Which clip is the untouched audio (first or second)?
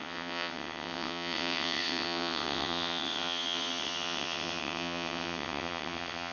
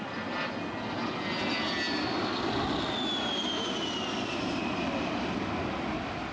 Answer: second